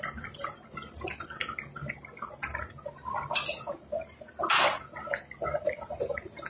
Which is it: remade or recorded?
recorded